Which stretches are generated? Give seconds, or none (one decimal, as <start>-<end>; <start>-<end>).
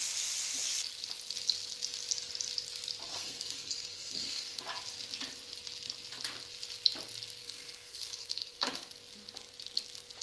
3.1-4.6; 7.4-8.9